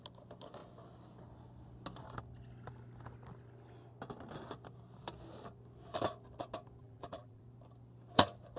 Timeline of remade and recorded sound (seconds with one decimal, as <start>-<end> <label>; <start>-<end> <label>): 0.0-6.8 recorded; 6.8-7.4 remade; 7.4-8.6 recorded

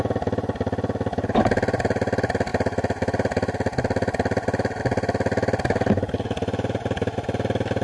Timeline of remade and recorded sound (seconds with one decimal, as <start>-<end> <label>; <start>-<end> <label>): 0.0-7.8 recorded

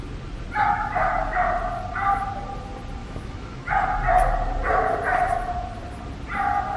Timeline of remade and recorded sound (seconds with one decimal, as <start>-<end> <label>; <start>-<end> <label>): 0.0-3.0 recorded; 3.0-3.7 remade; 3.7-6.8 recorded